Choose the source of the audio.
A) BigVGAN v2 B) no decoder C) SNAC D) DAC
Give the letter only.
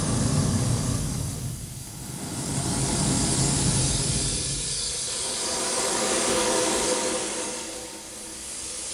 D